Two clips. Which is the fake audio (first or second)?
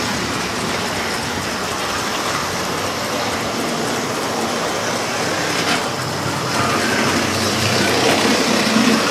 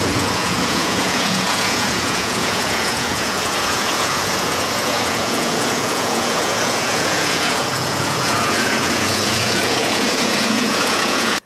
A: second